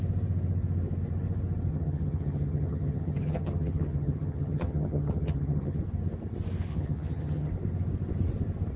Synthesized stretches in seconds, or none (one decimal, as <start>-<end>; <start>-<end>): 1.7-5.8; 6.7-7.5